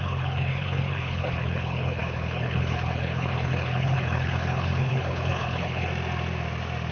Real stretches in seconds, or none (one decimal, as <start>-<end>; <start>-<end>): 5.9-6.9